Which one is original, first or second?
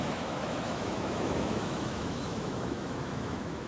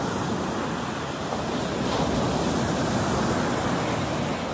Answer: second